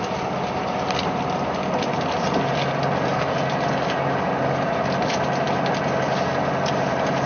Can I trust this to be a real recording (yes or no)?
yes